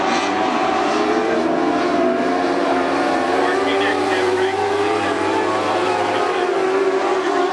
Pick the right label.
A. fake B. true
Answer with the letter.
B